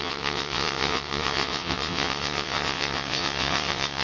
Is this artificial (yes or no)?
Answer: yes